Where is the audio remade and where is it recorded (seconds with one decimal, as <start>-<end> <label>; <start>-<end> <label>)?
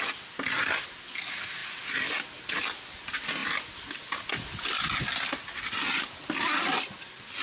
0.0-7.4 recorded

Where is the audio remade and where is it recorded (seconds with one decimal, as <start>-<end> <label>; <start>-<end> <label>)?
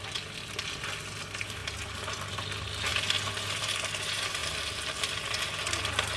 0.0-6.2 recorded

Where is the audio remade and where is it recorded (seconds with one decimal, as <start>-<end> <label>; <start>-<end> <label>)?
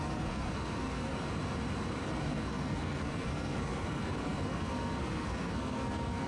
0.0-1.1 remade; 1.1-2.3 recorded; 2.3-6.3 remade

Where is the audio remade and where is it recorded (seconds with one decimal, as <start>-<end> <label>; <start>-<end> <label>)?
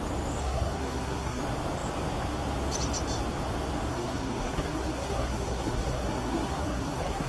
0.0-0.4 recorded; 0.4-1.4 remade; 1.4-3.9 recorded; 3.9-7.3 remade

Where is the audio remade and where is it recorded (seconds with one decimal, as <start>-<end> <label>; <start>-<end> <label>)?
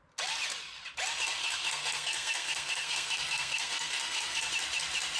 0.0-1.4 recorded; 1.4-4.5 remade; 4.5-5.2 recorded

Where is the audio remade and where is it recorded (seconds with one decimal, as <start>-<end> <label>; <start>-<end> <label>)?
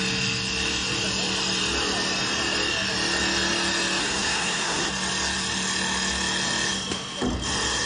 0.0-4.0 recorded; 4.0-4.9 remade; 4.9-7.9 recorded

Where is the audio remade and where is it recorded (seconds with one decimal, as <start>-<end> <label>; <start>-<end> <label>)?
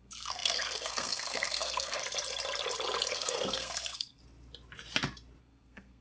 0.0-2.0 remade; 2.0-3.1 recorded; 3.1-4.2 remade; 4.2-5.4 recorded; 5.4-6.0 remade